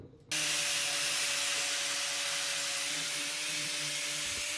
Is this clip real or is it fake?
real